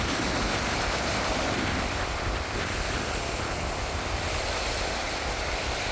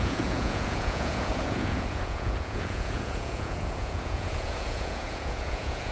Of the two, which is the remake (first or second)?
second